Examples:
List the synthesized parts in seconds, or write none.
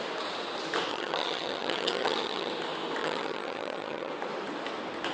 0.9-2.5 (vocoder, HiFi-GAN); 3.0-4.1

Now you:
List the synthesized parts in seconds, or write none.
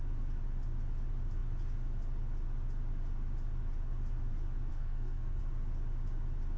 4.7-5.4 (codec, SNAC)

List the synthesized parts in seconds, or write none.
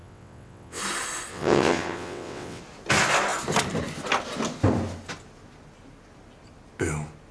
0.0-0.8 (vocoder, WaveNeXt); 1.3-2.6